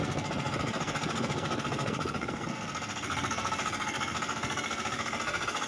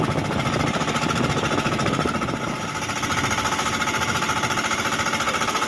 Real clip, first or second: second